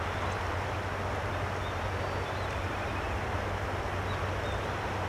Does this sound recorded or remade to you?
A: recorded